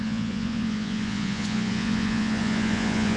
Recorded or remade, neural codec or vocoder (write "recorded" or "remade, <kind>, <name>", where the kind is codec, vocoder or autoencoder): remade, vocoder, Vocos